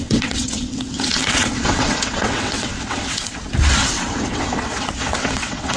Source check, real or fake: fake